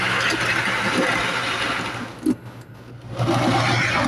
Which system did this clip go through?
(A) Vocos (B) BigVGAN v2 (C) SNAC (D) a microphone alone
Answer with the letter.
D